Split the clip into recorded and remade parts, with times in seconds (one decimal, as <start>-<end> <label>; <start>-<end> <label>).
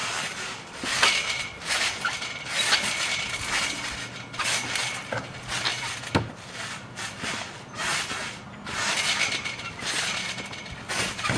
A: 0.0-1.1 remade; 1.1-5.7 recorded; 5.7-7.5 remade; 7.5-11.4 recorded